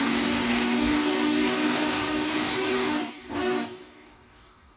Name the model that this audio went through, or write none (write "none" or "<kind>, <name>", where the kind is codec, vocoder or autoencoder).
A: codec, DAC